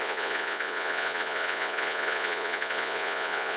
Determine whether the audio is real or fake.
fake